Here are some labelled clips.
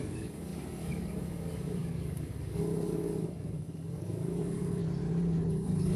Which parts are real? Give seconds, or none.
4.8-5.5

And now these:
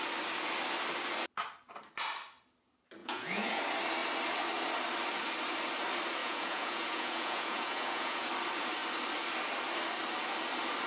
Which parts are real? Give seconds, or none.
0.0-3.0; 3.6-6.2; 8.3-10.9

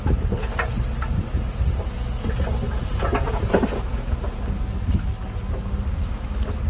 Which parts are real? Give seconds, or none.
0.0-2.9; 3.5-3.9; 4.4-6.7

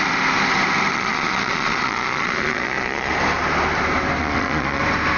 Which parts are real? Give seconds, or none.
0.0-0.9; 3.1-4.2; 4.8-5.2

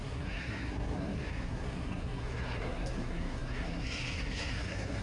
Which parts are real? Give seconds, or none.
none

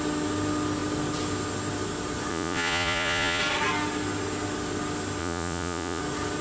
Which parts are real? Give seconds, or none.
0.0-2.3; 3.4-5.2; 6.0-6.4